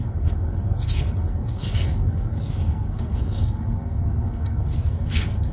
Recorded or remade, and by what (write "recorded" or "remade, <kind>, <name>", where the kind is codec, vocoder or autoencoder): remade, codec, SNAC